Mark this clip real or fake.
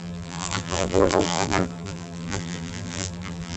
fake